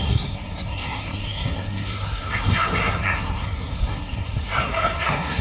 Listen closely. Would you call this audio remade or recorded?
remade